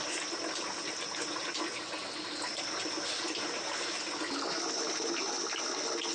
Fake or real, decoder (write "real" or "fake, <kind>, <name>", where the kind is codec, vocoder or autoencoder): real